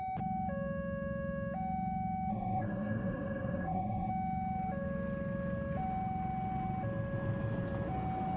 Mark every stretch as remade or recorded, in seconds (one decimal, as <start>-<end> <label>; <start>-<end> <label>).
0.0-2.3 recorded; 2.3-4.1 remade; 4.1-8.4 recorded